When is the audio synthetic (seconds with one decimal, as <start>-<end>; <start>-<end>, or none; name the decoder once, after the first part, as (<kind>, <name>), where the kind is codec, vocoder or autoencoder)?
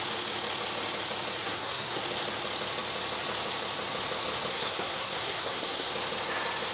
1.4-2.0 (codec, SNAC); 4.5-5.9